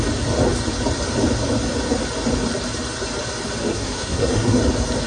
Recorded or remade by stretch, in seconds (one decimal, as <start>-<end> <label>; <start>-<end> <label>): 0.0-3.7 recorded; 3.7-4.6 remade; 4.6-5.1 recorded

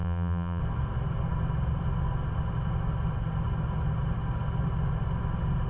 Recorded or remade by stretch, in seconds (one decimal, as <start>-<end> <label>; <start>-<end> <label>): 0.0-0.6 remade; 0.6-5.7 recorded

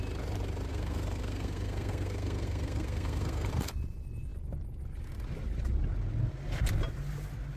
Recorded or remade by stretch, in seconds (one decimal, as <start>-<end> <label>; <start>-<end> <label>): 0.0-0.7 recorded; 0.7-3.5 remade; 3.5-7.6 recorded

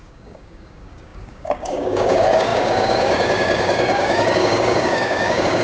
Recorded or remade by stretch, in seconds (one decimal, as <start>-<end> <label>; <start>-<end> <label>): 0.0-5.6 remade

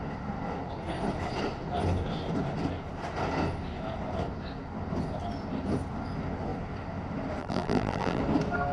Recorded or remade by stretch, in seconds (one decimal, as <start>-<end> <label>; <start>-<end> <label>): 0.0-7.4 recorded; 7.4-8.2 remade; 8.2-8.7 recorded

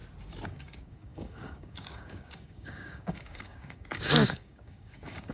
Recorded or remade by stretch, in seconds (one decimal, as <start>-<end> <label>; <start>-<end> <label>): 0.0-0.5 recorded; 0.5-5.3 remade